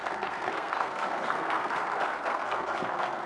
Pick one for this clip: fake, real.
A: fake